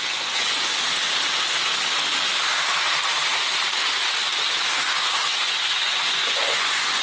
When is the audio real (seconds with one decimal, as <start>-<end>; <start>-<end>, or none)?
0.7-4.9